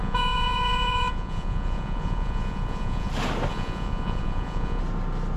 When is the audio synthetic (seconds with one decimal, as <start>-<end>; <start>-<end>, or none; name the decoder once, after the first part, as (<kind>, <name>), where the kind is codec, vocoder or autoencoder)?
0.0-3.1 (vocoder, Vocos); 3.5-4.8

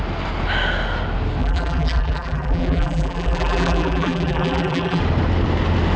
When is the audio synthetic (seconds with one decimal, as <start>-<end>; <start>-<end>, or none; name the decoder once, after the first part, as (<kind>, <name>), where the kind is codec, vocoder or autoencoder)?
1.4-5.0 (vocoder, BigVGAN v2)

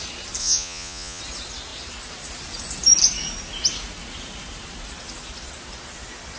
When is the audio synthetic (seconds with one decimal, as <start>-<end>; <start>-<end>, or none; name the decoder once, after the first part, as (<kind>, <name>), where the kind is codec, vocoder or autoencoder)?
0.4-1.2 (vocoder, Vocos)